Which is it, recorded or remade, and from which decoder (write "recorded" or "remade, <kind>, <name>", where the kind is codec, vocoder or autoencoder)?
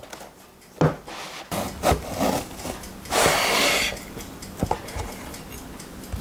recorded